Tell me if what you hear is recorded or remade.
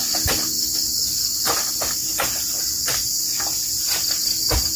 recorded